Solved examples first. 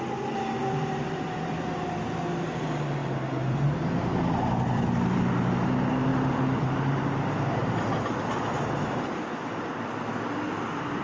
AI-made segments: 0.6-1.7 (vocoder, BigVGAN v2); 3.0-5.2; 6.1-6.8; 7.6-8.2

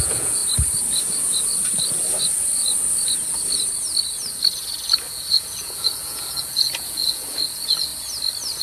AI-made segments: 0.0-0.4 (vocoder, Vocos); 5.1-7.9